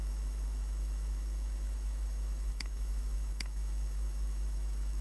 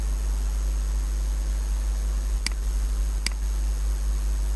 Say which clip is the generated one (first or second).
first